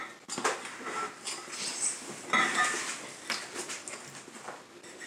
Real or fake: real